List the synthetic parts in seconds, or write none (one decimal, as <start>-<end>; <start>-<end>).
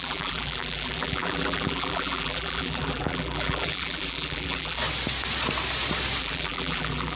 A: 0.0-4.8; 6.2-7.2